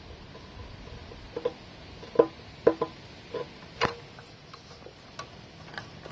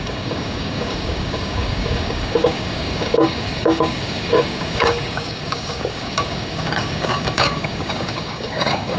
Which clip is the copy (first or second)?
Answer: second